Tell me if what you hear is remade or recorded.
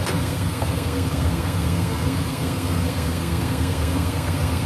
remade